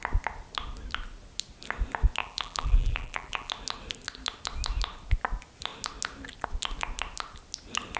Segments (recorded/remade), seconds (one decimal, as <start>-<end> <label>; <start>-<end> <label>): 0.0-2.2 recorded; 2.2-3.5 remade; 3.5-8.0 recorded